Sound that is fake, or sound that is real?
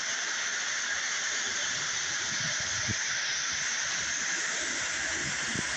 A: real